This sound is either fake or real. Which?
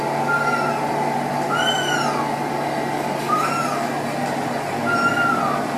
real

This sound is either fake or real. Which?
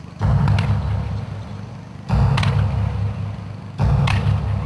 real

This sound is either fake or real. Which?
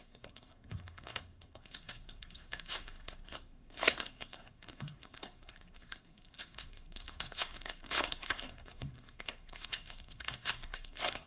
fake